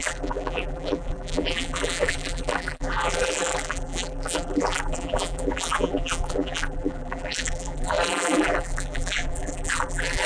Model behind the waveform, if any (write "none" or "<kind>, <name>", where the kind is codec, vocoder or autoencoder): vocoder, BigVGAN v2